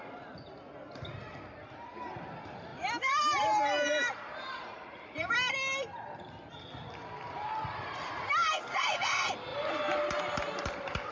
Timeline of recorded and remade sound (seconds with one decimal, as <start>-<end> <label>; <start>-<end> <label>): 0.0-2.7 recorded; 2.7-5.3 remade; 5.3-11.1 recorded